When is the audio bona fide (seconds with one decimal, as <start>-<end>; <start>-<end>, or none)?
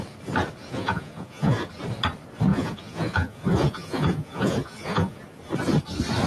0.0-0.6; 1.7-2.5; 5.2-6.3